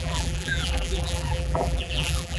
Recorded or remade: remade